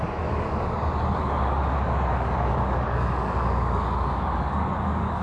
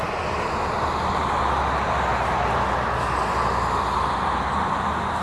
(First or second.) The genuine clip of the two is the second